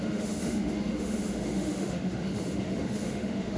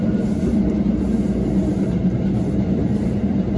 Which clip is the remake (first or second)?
first